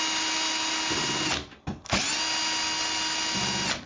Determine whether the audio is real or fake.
real